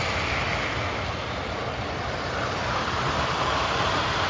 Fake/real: real